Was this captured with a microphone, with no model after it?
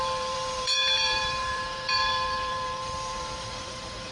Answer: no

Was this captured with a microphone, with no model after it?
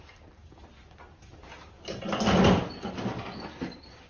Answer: yes